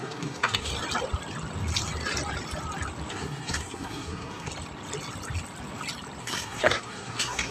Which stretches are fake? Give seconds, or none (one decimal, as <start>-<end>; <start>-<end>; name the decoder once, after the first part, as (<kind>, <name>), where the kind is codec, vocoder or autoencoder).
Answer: 0.0-0.7 (codec, SNAC); 3.1-4.5; 6.2-7.5